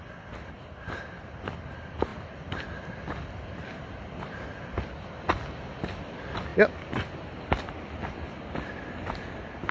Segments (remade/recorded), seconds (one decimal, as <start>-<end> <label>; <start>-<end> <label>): 0.0-9.7 recorded